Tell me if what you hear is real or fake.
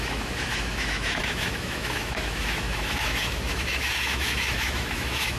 fake